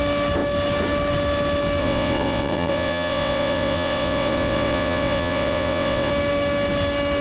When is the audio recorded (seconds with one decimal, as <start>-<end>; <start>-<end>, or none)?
0.0-1.8; 6.1-7.2

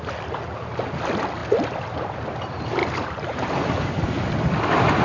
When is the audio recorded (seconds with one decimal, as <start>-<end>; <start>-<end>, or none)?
0.0-2.8; 3.9-5.0

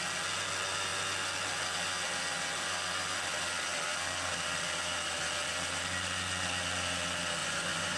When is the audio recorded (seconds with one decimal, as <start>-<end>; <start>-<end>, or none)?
0.0-7.4

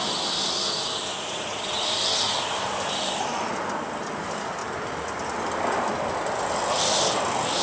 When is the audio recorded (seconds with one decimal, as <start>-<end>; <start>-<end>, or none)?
0.0-1.1; 2.0-7.6

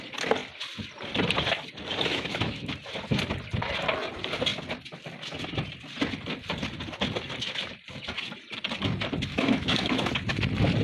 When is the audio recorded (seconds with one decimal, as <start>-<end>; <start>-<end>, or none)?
0.0-2.1; 2.7-9.3; 10.1-10.8

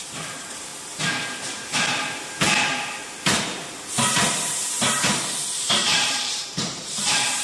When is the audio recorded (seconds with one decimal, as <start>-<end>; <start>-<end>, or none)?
0.7-4.3

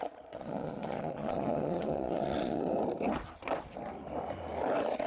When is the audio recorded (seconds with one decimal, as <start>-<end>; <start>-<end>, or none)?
2.7-5.1

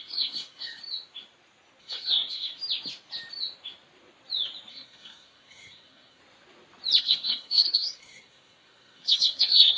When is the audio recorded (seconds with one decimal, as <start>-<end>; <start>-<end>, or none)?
0.8-1.8; 2.6-4.7; 6.2-7.0